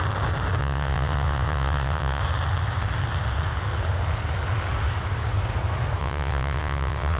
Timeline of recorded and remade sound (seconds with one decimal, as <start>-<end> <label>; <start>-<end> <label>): 0.0-0.6 recorded; 0.6-2.2 remade; 2.2-6.0 recorded; 6.0-7.2 remade